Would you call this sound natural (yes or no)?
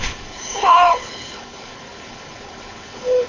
no